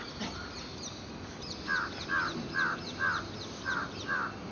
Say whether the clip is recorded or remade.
recorded